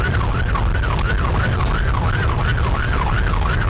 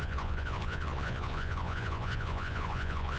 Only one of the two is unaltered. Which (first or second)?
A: first